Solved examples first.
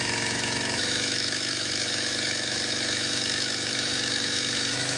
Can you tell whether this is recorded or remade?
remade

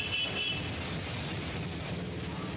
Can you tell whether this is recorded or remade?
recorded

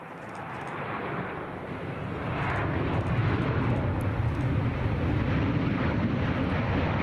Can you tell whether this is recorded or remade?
recorded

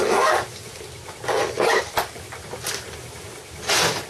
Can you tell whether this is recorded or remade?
recorded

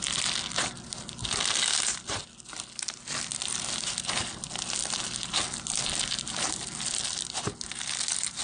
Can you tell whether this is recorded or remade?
recorded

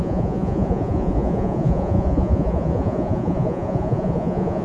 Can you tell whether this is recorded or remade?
remade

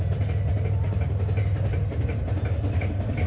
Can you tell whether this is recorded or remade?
recorded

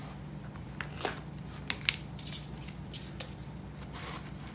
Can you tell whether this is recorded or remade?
recorded